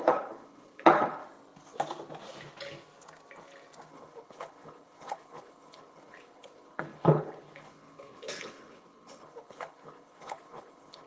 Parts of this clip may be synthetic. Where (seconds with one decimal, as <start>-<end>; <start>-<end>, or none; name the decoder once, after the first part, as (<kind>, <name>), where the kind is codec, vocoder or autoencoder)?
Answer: 0.0-1.2 (codec, HILCodec); 3.9-11.1